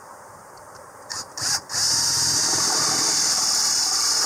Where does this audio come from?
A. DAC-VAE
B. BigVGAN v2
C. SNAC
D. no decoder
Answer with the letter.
B